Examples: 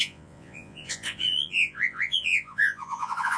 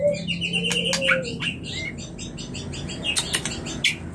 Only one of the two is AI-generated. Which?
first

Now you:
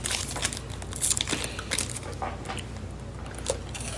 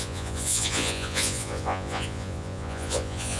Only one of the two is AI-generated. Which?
second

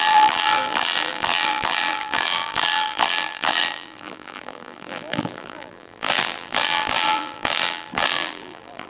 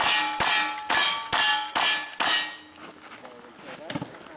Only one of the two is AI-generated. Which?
first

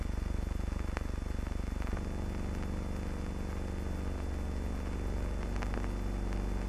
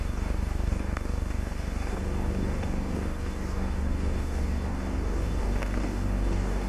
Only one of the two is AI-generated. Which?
second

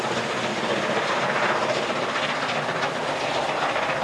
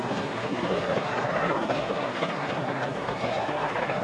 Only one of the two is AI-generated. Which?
second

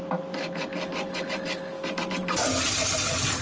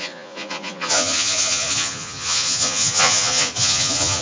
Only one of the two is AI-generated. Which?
second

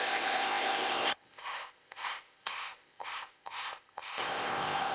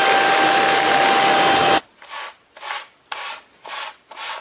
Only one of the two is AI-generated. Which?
first